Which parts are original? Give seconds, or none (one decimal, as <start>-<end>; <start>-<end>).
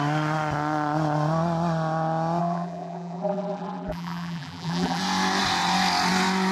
0.0-2.4; 5.0-6.5